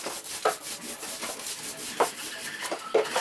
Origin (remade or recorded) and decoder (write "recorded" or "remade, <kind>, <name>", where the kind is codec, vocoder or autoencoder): recorded